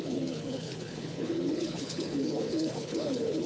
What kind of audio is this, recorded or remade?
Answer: remade